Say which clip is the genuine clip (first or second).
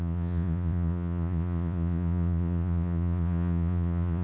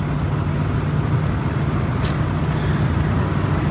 second